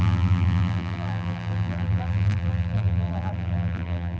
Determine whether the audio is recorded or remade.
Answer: remade